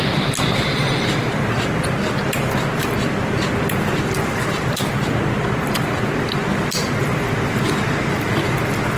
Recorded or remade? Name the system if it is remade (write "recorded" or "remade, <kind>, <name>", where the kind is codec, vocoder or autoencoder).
recorded